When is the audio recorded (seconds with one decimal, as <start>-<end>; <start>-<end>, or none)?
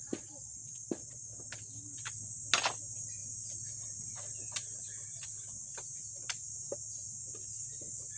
0.0-8.2